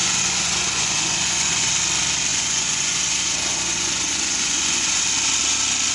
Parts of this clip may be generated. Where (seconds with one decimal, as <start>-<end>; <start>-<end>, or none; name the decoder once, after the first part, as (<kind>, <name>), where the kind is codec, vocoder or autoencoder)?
0.0-1.7 (vocoder, Vocos); 2.3-5.0